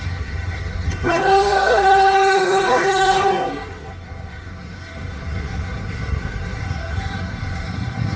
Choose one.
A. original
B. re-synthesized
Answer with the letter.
B